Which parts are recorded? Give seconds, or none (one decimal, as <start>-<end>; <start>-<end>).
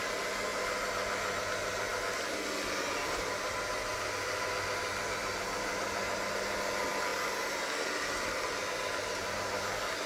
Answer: 0.0-10.1